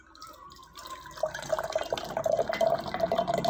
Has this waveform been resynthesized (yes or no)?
no